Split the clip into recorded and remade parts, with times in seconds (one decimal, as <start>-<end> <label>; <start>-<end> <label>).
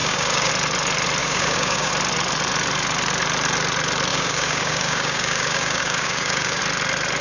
0.0-0.5 remade; 0.5-1.2 recorded; 1.2-1.9 remade; 1.9-4.1 recorded; 4.1-6.6 remade; 6.6-7.2 recorded